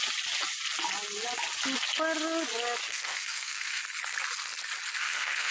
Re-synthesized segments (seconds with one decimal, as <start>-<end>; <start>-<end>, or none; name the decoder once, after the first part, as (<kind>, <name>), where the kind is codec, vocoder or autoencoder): 2.9-3.8 (codec, SNAC); 5.0-5.5